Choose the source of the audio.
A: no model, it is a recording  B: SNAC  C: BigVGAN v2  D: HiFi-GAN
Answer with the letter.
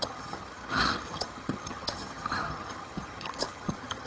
D